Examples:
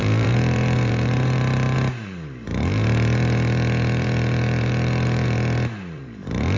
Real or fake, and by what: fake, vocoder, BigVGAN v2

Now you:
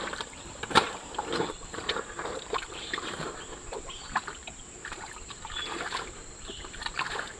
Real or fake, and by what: fake, vocoder, BigVGAN v2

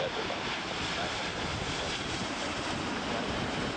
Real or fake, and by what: real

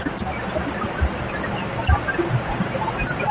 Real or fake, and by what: fake, vocoder, BigVGAN v2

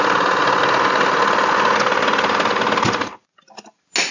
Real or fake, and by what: real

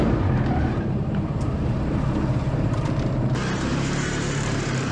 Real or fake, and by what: fake, vocoder, BigVGAN v2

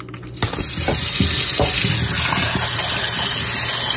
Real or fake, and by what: real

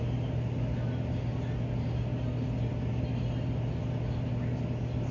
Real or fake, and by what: real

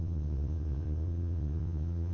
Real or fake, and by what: fake, vocoder, Vocos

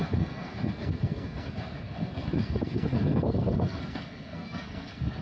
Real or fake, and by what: fake, codec, SNAC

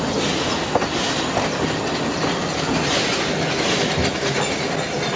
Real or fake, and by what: real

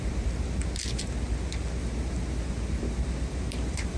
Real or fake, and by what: real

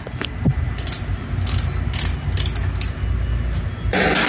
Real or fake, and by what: real